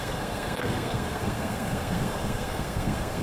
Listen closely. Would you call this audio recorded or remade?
remade